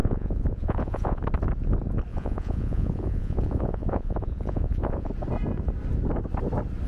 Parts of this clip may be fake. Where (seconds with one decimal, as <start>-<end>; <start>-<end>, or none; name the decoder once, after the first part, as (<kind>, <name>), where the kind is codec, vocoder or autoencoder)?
0.0-1.2 (vocoder, Vocos); 2.1-5.1